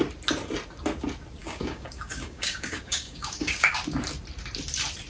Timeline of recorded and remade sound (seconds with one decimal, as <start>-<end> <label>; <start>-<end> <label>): 0.0-1.4 recorded; 1.4-3.8 remade; 3.8-5.1 recorded

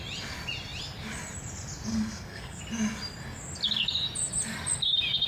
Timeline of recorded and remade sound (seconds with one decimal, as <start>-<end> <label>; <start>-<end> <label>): 0.0-1.9 recorded; 1.9-2.6 remade; 2.6-5.3 recorded

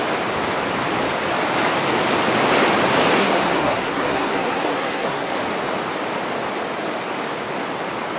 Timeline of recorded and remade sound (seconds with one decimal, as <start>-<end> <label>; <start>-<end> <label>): 0.0-3.2 recorded; 3.2-5.3 remade; 5.3-8.2 recorded